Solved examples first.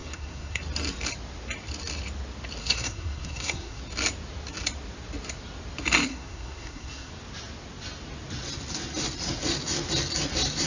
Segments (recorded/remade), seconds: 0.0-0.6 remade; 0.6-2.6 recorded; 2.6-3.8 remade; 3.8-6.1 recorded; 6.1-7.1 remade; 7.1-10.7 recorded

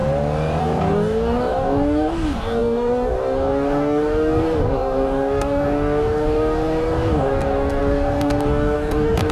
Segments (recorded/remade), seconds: 0.0-0.6 recorded; 0.6-9.3 remade